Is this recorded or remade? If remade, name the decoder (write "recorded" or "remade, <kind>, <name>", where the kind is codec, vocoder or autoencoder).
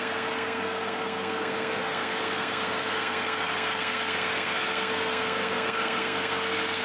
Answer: remade, codec, SNAC